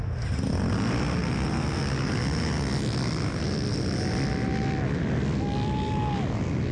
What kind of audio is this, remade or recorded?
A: recorded